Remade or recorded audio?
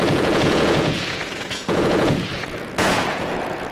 remade